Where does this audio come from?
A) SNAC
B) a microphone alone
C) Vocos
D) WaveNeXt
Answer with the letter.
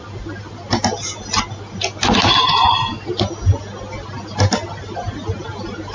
B